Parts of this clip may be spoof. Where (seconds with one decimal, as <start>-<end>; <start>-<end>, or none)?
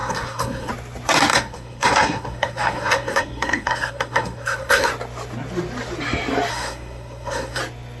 0.0-0.7; 1.3-4.9; 6.5-7.6